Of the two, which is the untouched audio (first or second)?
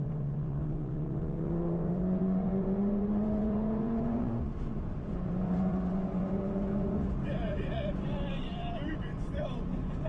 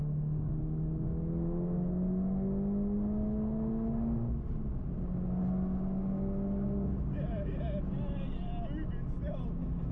second